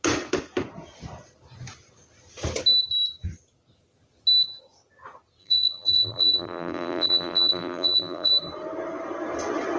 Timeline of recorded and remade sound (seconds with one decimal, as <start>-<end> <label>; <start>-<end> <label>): 0.0-5.4 recorded; 5.4-8.3 remade; 8.3-9.8 recorded